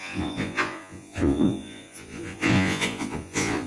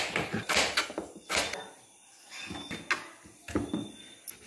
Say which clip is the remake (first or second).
first